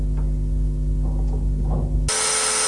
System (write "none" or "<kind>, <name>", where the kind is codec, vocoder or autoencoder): none